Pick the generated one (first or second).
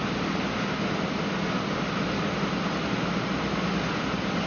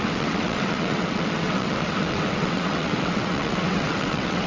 second